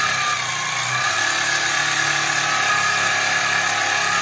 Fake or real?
real